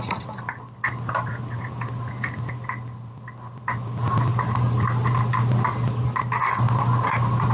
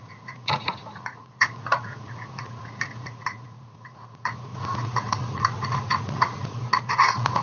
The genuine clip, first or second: first